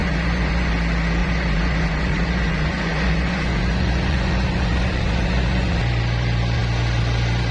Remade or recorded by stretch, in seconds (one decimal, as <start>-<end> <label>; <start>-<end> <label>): 0.0-0.7 remade; 0.7-1.2 recorded; 1.2-5.7 remade; 5.7-7.5 recorded